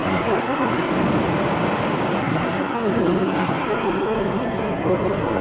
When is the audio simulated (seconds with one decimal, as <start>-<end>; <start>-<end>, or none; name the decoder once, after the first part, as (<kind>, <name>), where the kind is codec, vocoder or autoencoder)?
0.0-0.9 (codec, SNAC); 2.2-5.4